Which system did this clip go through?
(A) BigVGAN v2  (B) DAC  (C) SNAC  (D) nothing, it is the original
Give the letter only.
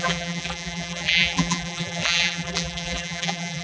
A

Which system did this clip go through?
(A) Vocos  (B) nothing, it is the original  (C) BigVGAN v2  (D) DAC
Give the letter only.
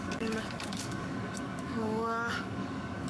D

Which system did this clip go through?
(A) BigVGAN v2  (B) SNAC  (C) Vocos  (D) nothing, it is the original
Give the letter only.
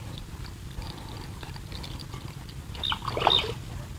D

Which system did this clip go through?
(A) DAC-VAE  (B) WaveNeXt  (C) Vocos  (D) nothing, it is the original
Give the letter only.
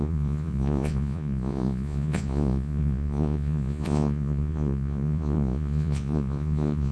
C